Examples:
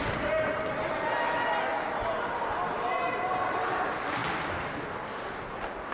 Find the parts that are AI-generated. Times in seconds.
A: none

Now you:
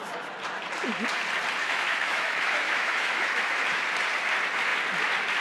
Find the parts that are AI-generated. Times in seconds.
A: 1.6-3.8 (autoencoder, DAC-VAE)

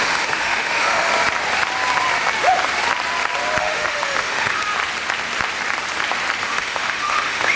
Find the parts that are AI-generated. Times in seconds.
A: 0.0-1.1 (autoencoder, DAC-VAE); 3.6-4.6; 6.4-7.6